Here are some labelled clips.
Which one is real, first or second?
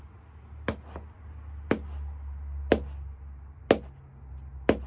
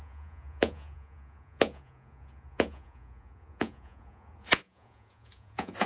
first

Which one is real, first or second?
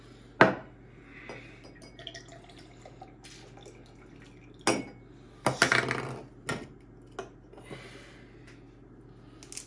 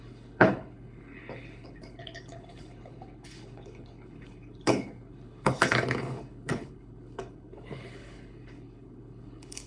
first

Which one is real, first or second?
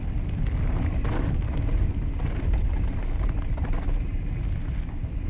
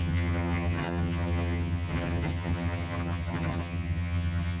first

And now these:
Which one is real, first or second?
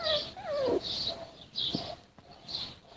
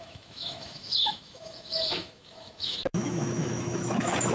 first